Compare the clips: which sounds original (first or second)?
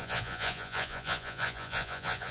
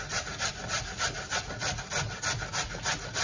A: second